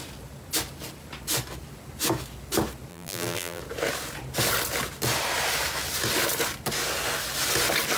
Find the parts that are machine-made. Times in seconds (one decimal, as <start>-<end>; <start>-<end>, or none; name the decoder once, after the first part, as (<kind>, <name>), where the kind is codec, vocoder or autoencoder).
2.9-3.6 (vocoder, BigVGAN v2)